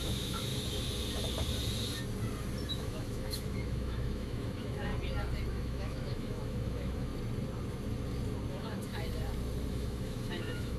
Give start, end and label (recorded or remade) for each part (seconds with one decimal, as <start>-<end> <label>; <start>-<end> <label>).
0.0-0.5 remade; 0.5-2.7 recorded; 2.7-4.9 remade; 4.9-5.5 recorded; 5.5-7.1 remade; 7.1-8.5 recorded; 8.5-8.9 remade; 8.9-9.7 recorded; 9.7-10.8 remade